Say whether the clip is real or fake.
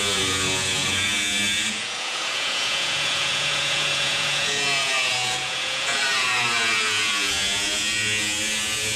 fake